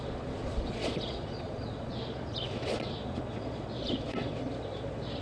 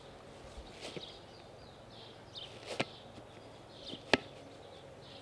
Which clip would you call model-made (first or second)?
first